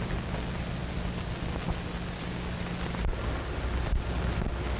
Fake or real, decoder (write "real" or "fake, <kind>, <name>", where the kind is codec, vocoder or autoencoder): real